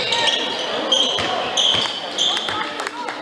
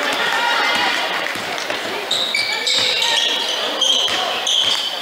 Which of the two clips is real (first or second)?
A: first